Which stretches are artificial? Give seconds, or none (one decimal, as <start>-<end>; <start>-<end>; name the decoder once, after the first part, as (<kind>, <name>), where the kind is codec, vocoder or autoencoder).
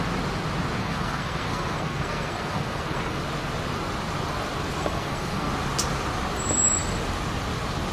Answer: 0.8-3.2 (codec, SNAC); 4.8-5.5